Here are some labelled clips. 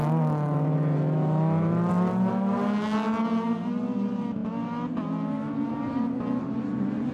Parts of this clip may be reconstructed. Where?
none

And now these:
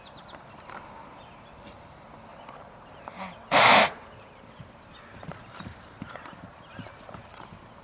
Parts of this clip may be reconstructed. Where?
2.3-6.9 (vocoder, BigVGAN v2)

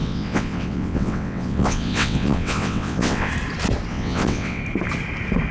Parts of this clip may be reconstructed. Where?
0.0-3.3 (vocoder, WaveNeXt); 3.9-4.6

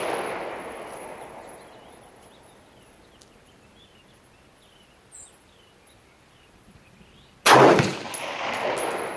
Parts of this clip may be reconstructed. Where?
none

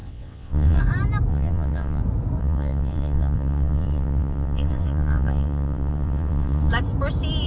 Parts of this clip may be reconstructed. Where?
0.0-0.8 (vocoder, WaveNeXt); 1.3-2.0; 2.4-6.7

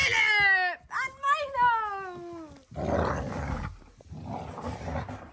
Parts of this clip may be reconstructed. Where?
3.2-5.3 (vocoder, BigVGAN v2)

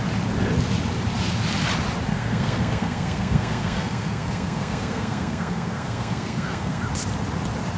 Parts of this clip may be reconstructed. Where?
2.1-6.8 (codec, SNAC)